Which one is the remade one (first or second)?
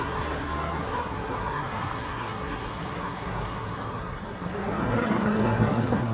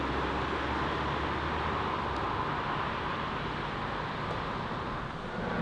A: first